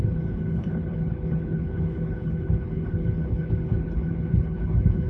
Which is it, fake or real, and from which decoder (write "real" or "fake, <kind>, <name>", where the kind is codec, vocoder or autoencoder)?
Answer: fake, codec, HILCodec